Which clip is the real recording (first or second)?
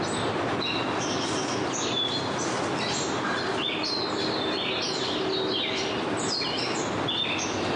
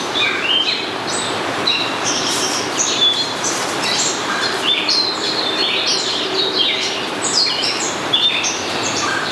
first